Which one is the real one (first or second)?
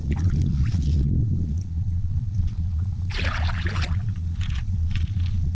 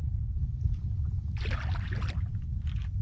second